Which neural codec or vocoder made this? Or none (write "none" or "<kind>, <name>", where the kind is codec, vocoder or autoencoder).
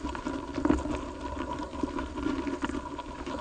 none